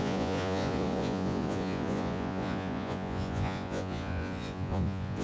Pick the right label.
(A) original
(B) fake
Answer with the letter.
B